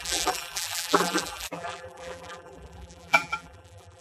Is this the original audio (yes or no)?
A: no